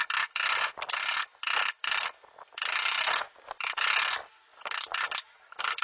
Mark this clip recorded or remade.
recorded